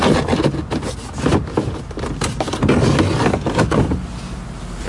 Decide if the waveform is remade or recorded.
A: recorded